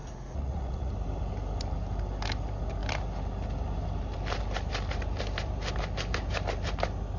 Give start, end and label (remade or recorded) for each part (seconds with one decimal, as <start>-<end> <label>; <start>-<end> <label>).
0.0-0.9 remade; 0.9-7.2 recorded